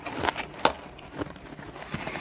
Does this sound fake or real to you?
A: real